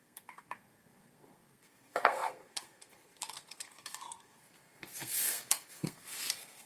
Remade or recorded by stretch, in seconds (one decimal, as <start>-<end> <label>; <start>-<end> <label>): 0.0-6.7 remade